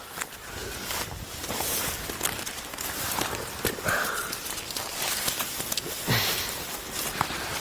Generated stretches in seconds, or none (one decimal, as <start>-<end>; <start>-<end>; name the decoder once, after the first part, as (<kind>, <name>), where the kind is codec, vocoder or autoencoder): none